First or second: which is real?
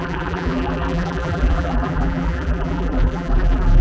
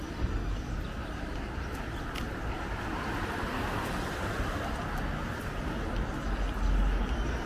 second